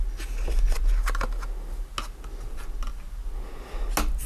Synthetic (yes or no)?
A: no